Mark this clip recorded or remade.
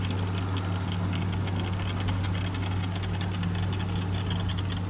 recorded